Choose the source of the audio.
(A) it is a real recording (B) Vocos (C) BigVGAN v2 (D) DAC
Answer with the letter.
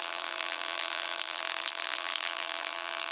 C